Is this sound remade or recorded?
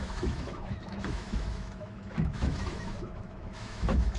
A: remade